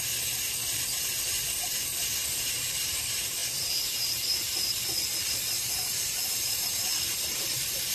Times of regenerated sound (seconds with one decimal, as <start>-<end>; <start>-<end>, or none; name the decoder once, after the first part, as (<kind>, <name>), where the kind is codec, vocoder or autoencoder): none